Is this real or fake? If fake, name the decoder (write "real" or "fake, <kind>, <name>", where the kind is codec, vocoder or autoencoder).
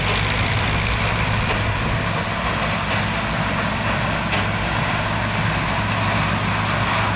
real